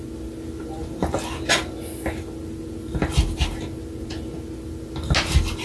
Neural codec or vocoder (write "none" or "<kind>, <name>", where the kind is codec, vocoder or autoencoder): none